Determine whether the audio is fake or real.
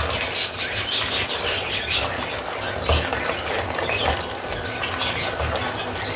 real